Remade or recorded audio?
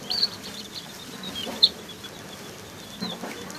remade